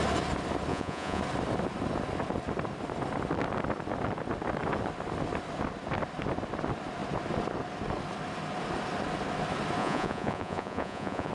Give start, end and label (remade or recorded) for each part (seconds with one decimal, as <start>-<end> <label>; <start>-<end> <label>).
0.0-0.7 recorded; 0.7-1.2 remade; 1.2-9.8 recorded; 9.8-11.3 remade